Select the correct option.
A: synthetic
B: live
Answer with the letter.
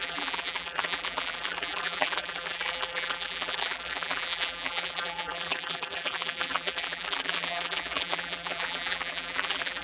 A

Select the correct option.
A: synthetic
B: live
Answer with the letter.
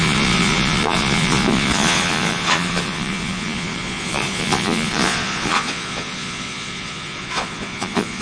A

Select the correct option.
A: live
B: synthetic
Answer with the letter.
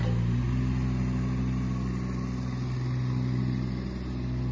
A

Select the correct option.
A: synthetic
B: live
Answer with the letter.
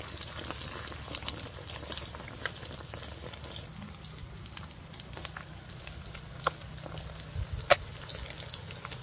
B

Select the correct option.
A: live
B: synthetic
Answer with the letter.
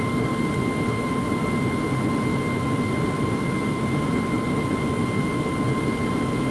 A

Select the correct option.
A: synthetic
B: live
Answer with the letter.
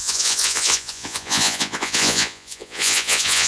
A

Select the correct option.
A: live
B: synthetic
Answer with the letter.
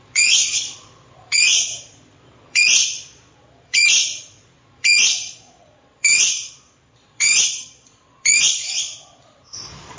B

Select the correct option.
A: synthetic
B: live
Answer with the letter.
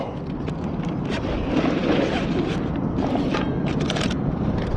A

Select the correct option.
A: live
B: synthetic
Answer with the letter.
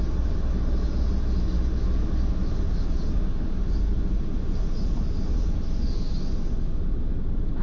A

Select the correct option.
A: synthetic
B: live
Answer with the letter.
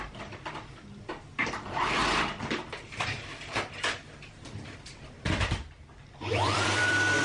A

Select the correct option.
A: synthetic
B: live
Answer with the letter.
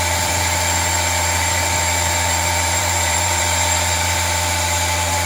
A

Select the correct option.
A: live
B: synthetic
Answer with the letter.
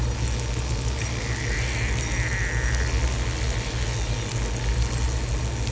A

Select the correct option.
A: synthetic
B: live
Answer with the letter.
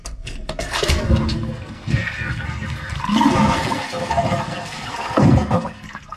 A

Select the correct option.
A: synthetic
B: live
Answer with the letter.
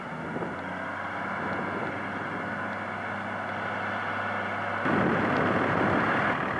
B